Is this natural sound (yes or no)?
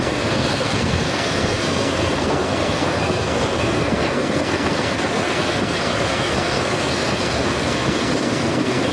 no